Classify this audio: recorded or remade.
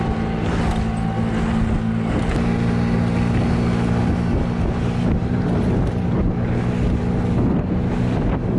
recorded